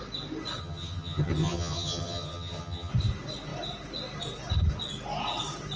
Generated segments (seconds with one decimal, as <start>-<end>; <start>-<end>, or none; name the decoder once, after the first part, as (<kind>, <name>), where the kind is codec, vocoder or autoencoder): 0.6-2.9 (vocoder, HiFi-GAN)